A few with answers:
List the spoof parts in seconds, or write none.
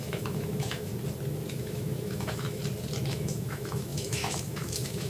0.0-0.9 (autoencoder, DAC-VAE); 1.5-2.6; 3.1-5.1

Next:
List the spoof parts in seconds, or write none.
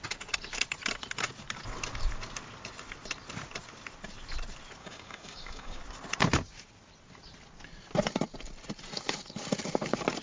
4.8-5.8 (codec, DAC)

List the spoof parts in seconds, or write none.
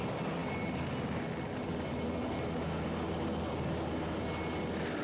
none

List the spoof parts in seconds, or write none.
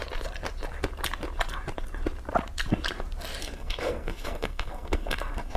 3.4-5.6 (codec, SNAC)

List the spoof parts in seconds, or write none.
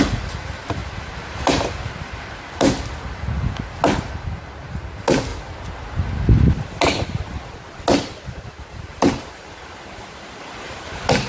0.0-5.3 (vocoder, BigVGAN v2); 8.3-11.3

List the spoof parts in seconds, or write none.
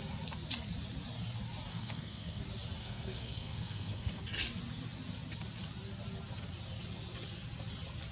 1.7-2.4 (codec, SNAC); 2.8-4.2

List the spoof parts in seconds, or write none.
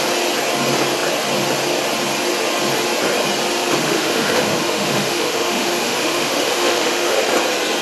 3.8-7.2 (autoencoder, DAC-VAE)